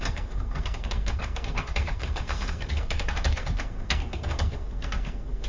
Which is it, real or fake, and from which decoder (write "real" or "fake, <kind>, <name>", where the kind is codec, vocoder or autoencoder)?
fake, codec, SNAC